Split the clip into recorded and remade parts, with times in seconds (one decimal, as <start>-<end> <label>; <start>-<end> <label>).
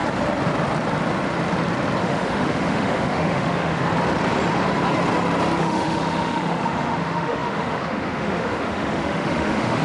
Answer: 0.0-2.0 recorded; 2.0-3.9 remade; 3.9-5.6 recorded; 5.6-9.8 remade